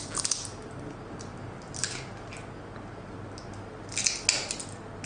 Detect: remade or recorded recorded